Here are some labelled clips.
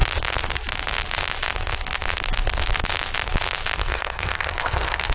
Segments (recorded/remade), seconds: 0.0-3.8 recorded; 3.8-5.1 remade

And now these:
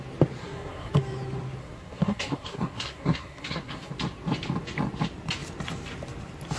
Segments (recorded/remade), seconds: 0.0-0.4 recorded; 0.4-0.9 remade; 0.9-1.6 recorded; 1.6-3.9 remade; 3.9-6.6 recorded

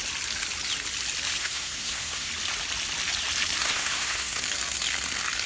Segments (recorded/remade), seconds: 0.0-1.4 recorded; 1.4-2.3 remade; 2.3-3.6 recorded; 3.6-4.4 remade; 4.4-5.5 recorded

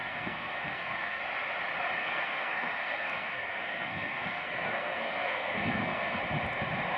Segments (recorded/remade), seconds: 0.0-1.2 remade; 1.2-2.0 recorded; 2.0-6.2 remade; 6.2-7.0 recorded

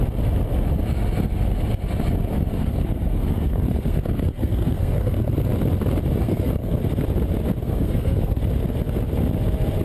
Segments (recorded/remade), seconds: 0.0-2.5 recorded; 2.5-5.5 remade; 5.5-6.2 recorded; 6.2-6.8 remade; 6.8-7.6 recorded; 7.6-8.4 remade; 8.4-9.8 recorded